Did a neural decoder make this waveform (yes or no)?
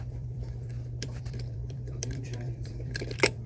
yes